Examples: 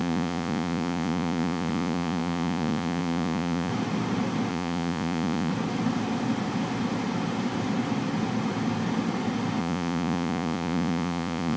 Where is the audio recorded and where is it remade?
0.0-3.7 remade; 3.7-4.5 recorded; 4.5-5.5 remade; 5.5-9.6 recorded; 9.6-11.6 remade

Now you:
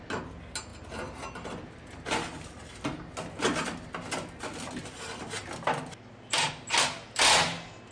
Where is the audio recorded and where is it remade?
0.0-7.9 recorded

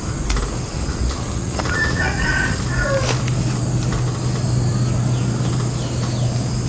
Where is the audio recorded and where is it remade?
0.0-0.7 recorded; 0.7-2.6 remade; 2.6-6.7 recorded

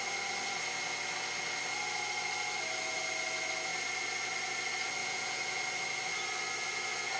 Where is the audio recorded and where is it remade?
0.0-5.0 recorded; 5.0-5.6 remade; 5.6-7.2 recorded

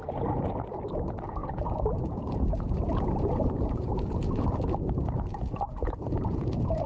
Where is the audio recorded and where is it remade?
0.0-6.9 remade

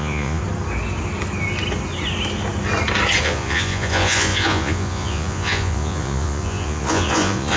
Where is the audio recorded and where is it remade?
0.0-0.4 remade; 0.4-3.2 recorded; 3.2-7.6 remade

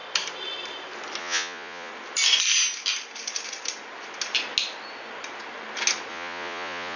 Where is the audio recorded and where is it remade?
0.0-1.2 recorded; 1.2-1.9 remade; 1.9-6.1 recorded; 6.1-7.0 remade

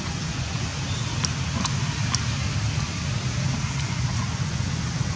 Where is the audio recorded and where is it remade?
0.0-0.7 remade; 0.7-3.8 recorded; 3.8-5.2 remade